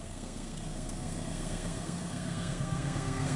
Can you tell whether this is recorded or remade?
remade